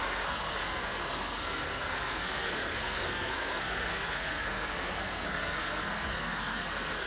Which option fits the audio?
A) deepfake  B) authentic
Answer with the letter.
A